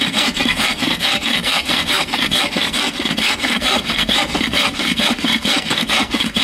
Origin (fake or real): fake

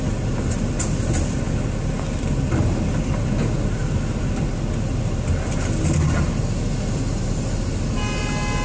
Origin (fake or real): real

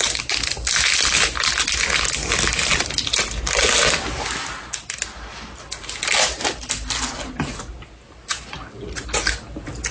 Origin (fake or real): real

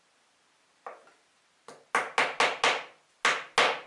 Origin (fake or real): real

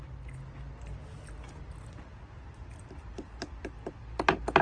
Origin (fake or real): real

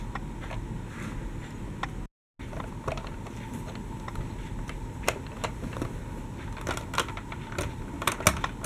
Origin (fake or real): real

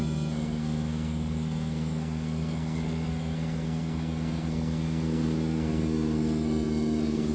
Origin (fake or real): fake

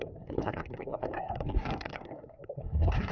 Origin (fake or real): fake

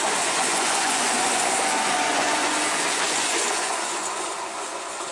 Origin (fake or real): fake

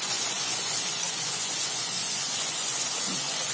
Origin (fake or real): fake